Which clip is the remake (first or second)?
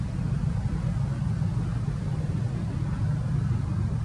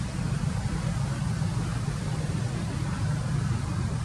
second